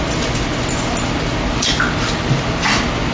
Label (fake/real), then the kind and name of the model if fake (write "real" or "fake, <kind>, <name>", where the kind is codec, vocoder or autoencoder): real